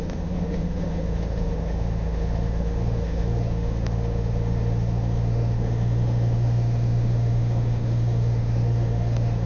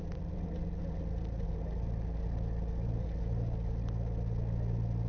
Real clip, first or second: second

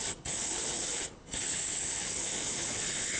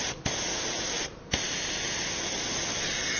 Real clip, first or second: second